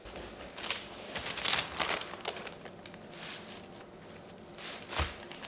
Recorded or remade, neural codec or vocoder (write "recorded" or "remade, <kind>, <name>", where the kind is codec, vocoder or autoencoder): recorded